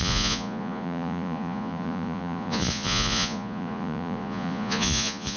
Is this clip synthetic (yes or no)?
yes